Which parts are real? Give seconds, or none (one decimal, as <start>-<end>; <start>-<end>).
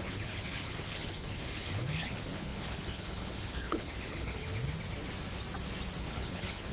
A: 4.4-6.0